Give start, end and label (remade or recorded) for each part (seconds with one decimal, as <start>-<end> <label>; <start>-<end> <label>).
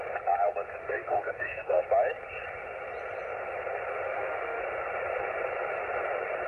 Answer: 0.0-0.8 recorded; 0.8-1.8 remade; 1.8-4.1 recorded; 4.1-4.6 remade; 4.6-6.5 recorded